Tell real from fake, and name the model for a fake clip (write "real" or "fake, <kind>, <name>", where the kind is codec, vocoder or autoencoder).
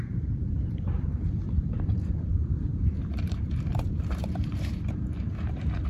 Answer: fake, vocoder, BigVGAN v2